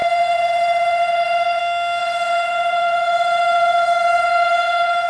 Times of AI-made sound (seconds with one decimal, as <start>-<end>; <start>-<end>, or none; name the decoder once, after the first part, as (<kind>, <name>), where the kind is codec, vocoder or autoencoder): 0.0-1.6 (vocoder, Vocos); 2.0-5.1